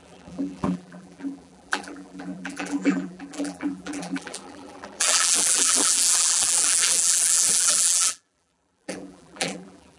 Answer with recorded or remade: remade